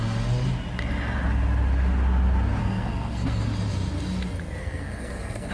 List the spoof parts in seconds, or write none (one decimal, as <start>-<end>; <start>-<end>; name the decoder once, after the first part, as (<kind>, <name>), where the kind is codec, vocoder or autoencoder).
2.6-3.4 (codec, SNAC); 4.6-5.5

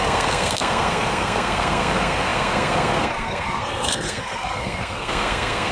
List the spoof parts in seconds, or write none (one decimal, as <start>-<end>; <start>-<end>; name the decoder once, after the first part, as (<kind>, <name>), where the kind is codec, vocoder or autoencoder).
0.0-5.7 (codec, SNAC)

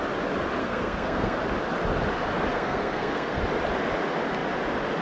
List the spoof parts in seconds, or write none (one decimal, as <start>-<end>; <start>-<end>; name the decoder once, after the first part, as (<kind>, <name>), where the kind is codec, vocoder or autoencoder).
0.6-1.4 (codec, SNAC); 2.5-3.4

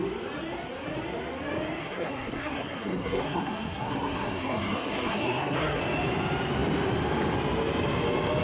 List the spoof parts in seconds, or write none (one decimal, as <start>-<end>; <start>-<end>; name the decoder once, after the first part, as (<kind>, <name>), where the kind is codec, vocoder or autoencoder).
1.8-5.8 (codec, SNAC)

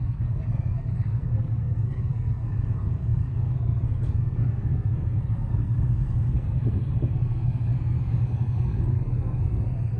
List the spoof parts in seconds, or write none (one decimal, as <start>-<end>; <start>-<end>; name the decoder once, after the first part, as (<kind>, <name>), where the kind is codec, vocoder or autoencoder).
0.0-10.0 (codec, SNAC)

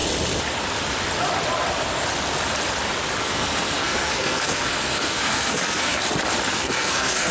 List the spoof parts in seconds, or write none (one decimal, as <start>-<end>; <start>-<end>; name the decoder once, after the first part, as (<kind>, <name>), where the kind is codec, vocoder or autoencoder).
3.2-6.0 (codec, SNAC); 6.5-7.3

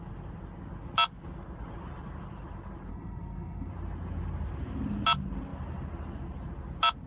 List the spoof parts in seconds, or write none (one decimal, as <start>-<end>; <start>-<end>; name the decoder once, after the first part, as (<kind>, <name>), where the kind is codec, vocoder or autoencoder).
2.9-3.7 (codec, SNAC)